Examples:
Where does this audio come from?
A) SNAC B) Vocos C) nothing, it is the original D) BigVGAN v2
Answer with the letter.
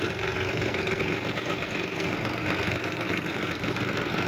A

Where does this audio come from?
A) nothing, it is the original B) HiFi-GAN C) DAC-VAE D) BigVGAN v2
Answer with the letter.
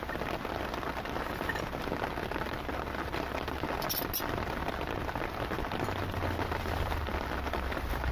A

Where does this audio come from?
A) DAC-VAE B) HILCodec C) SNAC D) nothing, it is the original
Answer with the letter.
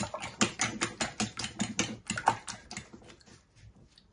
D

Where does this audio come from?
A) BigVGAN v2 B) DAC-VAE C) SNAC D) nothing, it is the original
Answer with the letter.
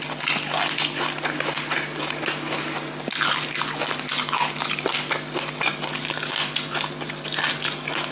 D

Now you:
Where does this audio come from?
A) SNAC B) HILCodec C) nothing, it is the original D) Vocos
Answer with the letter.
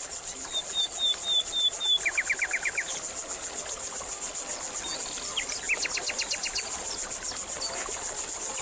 C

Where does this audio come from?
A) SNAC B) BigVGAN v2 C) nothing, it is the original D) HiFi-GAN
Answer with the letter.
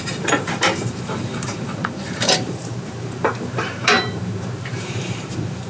B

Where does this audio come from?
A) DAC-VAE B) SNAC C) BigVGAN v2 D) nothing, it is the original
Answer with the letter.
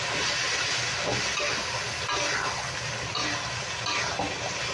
D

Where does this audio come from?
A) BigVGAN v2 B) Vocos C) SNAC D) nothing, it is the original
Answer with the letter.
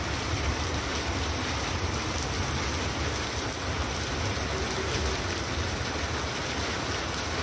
D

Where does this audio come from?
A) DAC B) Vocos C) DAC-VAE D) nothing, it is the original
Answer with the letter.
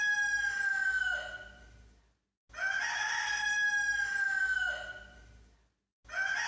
D